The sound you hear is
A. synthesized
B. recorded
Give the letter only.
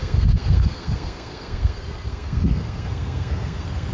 A